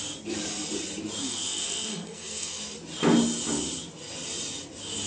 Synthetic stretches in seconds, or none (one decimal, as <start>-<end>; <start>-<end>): 1.2-2.6